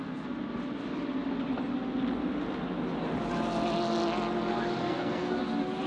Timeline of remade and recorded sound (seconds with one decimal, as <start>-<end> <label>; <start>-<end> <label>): 0.0-4.8 recorded; 4.8-5.4 remade; 5.4-5.9 recorded